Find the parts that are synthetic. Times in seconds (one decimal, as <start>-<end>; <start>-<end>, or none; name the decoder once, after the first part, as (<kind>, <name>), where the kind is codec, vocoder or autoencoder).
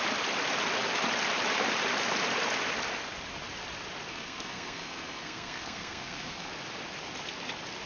4.1-6.5 (codec, SNAC)